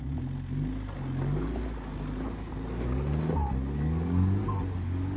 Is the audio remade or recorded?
recorded